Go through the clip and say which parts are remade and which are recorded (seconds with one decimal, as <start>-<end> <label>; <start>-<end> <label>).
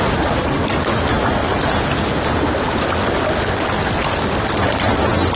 0.0-5.3 recorded